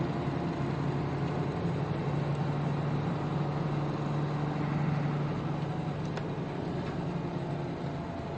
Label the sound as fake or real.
real